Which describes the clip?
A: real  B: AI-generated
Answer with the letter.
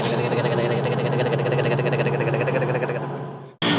A